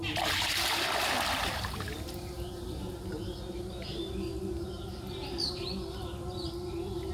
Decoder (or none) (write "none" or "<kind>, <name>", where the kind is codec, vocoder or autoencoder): none